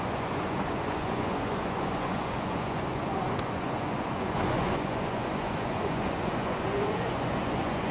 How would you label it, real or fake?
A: fake